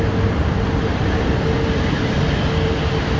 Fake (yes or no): no